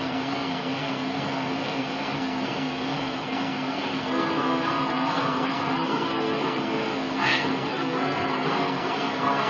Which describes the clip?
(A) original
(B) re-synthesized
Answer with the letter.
B